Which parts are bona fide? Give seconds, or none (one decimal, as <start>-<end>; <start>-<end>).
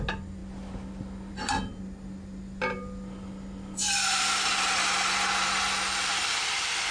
0.0-6.9